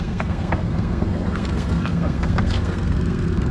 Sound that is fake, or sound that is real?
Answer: fake